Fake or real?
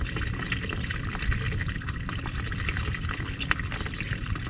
real